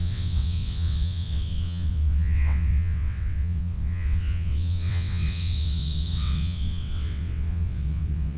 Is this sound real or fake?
fake